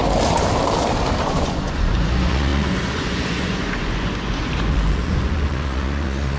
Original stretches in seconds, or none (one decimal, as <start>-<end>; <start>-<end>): 0.0-1.2